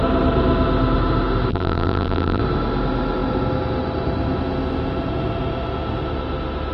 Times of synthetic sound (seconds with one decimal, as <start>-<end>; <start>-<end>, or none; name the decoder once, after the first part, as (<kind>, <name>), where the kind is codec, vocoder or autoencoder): 1.5-2.4 (vocoder, BigVGAN v2)